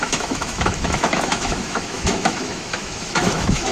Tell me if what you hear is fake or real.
fake